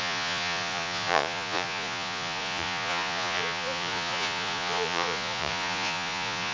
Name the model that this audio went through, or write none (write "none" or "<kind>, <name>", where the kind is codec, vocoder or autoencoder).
vocoder, Vocos